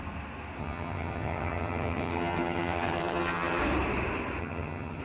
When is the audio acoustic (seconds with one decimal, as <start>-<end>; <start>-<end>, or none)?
0.0-0.6; 3.6-4.4